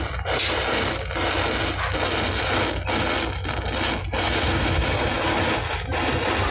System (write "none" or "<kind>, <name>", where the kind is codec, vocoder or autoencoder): none